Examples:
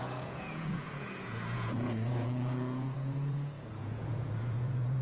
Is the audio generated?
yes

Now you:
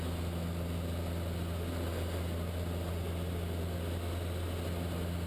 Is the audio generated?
no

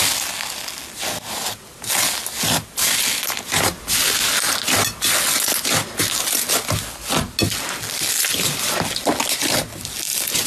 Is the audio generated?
no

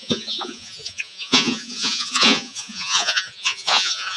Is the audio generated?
yes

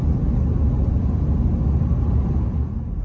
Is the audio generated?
no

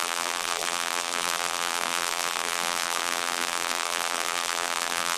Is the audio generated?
yes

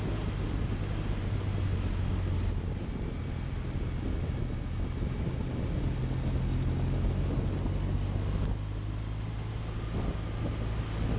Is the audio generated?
no